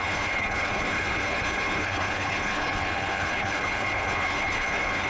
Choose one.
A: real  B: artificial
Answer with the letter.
B